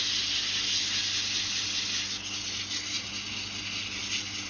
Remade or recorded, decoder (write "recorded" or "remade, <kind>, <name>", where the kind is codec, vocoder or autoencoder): recorded